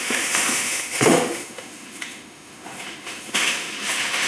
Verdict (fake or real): fake